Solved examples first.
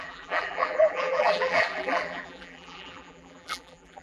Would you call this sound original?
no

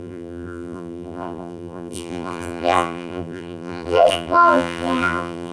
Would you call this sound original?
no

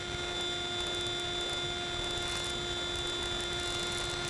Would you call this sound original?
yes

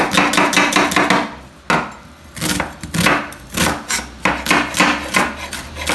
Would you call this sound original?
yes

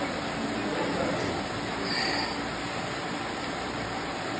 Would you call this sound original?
no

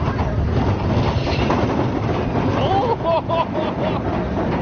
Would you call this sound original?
yes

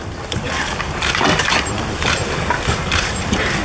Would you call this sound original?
no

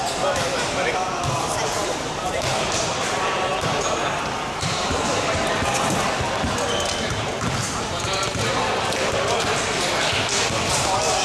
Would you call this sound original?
yes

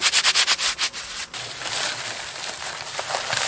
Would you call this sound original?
yes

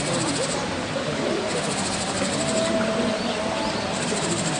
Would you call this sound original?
no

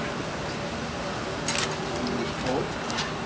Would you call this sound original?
yes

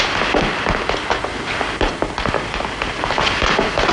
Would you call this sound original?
yes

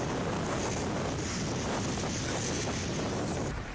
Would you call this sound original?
yes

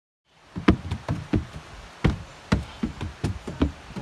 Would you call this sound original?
yes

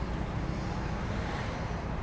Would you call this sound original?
no